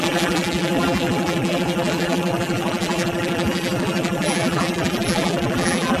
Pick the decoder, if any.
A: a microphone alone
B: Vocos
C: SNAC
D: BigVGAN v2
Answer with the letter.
D